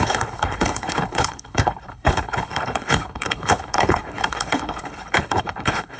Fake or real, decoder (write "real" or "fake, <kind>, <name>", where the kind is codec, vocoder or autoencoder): fake, codec, HILCodec